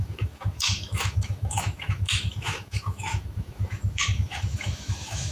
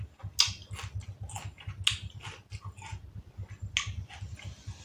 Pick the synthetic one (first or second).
first